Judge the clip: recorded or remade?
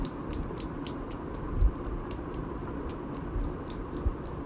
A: recorded